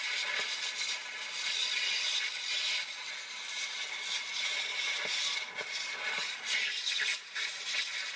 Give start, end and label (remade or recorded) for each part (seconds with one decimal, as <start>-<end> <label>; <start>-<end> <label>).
0.0-8.2 recorded